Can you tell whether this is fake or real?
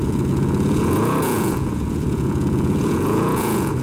fake